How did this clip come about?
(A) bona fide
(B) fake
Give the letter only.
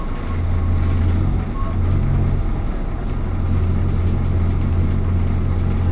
A